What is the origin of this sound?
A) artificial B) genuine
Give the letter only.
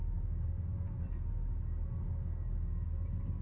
B